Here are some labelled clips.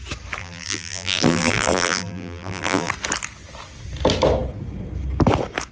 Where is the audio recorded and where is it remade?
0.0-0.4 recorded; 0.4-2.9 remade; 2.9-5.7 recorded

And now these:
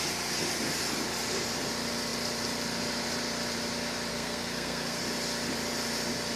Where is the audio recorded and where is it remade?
0.0-4.1 recorded; 4.1-5.0 remade; 5.0-6.4 recorded

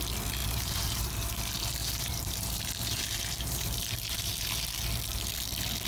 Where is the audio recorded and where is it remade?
0.0-0.4 recorded; 0.4-1.4 remade; 1.4-1.8 recorded; 1.8-4.5 remade; 4.5-5.9 recorded

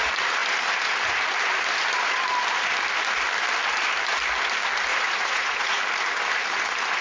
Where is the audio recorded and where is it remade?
0.0-4.9 recorded; 4.9-5.8 remade; 5.8-7.0 recorded

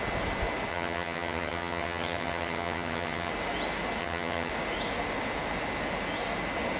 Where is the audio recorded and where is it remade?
0.0-0.7 recorded; 0.7-3.3 remade; 3.3-4.0 recorded; 4.0-4.5 remade; 4.5-6.8 recorded

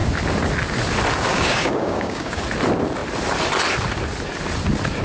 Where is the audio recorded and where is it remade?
0.0-1.3 recorded; 1.3-2.4 remade; 2.4-5.0 recorded